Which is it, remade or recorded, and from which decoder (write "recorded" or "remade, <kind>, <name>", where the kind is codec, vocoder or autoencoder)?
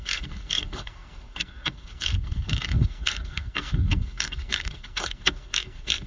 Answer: remade, codec, SNAC